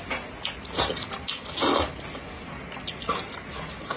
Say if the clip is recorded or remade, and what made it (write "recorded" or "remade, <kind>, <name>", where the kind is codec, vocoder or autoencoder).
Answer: recorded